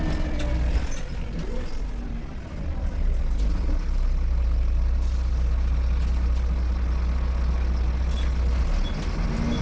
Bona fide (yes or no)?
yes